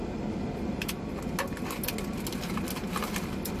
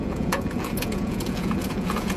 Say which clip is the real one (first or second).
first